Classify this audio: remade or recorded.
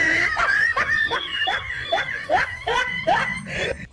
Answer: remade